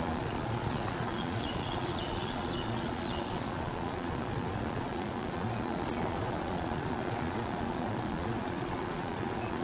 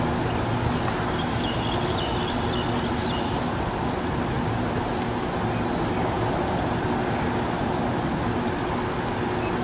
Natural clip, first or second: second